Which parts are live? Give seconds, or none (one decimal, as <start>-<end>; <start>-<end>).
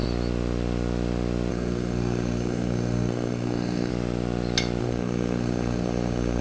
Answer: 0.0-1.5; 3.9-4.8